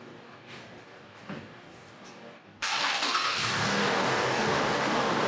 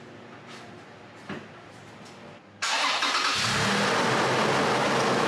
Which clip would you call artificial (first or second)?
first